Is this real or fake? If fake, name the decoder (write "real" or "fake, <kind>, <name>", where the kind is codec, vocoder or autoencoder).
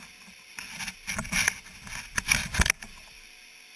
real